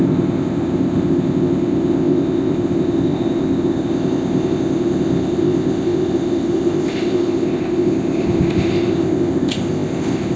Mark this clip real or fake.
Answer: fake